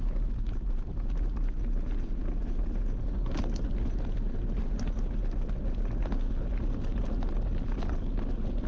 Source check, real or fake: real